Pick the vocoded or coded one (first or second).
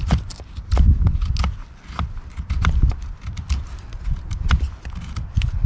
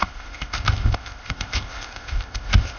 second